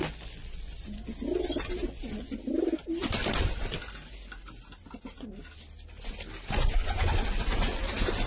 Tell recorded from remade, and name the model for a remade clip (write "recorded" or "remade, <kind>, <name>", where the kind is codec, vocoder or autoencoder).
recorded